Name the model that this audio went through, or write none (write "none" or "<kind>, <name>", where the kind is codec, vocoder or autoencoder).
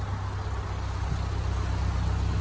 none